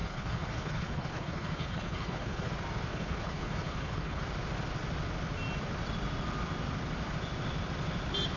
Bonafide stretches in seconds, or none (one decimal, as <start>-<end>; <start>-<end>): 2.5-2.9; 4.2-8.4